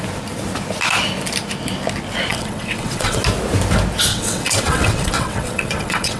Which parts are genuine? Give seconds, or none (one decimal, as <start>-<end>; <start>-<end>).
0.0-2.3; 3.2-4.1